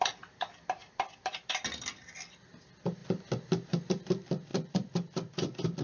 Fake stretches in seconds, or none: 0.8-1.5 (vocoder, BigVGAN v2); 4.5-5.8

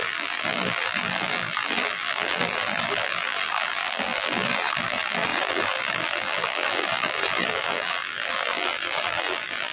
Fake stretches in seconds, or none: 0.0-9.7 (vocoder, BigVGAN v2)

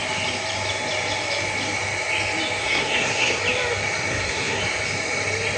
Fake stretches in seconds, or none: 2.6-3.4 (codec, SNAC); 4.1-4.6

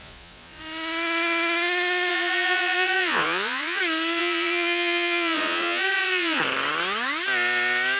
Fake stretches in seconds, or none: 0.0-0.6 (vocoder, Vocos); 2.1-3.8; 4.2-6.4

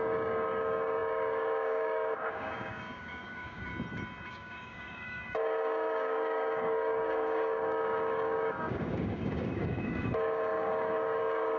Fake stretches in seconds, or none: 0.0-3.7 (codec, DAC); 4.3-11.6

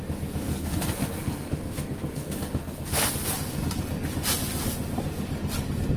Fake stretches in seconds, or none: 0.5-3.1 (codec, SNAC)

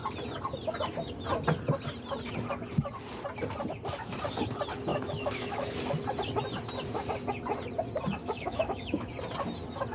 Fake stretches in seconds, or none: 4.9-5.7 (autoencoder, DAC-VAE); 8.2-9.1